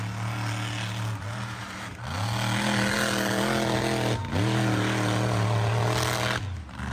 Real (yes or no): yes